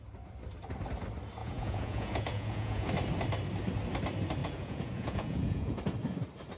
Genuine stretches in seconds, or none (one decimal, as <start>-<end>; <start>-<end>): 0.0-1.4; 2.9-4.4; 5.8-6.6